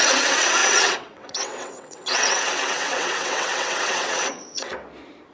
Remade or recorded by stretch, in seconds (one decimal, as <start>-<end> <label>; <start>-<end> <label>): 0.0-4.7 remade; 4.7-5.3 recorded